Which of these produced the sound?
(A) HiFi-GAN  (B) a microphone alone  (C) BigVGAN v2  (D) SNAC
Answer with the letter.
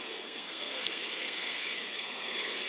D